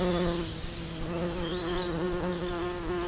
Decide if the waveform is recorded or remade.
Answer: recorded